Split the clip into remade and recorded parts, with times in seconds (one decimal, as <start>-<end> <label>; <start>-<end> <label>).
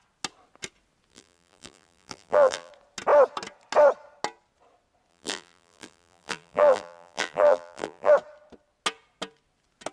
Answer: 0.0-1.1 recorded; 1.1-2.7 remade; 2.7-5.1 recorded; 5.1-8.1 remade; 8.1-9.9 recorded